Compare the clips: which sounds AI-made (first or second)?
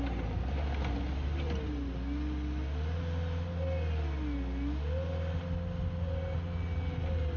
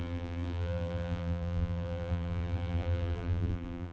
second